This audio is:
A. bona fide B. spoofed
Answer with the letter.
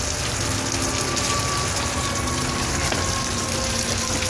A